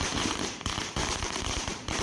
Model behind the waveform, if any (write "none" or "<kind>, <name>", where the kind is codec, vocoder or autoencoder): vocoder, BigVGAN v2